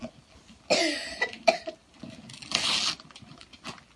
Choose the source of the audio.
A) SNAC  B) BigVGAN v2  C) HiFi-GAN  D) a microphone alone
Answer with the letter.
D